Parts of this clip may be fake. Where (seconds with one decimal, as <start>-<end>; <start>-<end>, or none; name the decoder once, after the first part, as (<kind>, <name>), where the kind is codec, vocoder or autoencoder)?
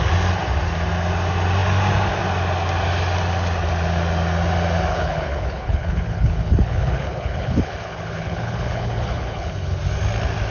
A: 4.9-9.8 (codec, HILCodec)